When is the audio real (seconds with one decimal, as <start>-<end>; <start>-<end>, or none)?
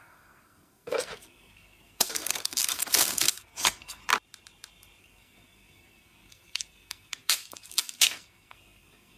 4.0-5.0